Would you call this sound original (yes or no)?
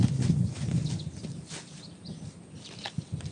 yes